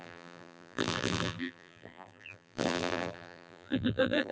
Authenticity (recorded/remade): remade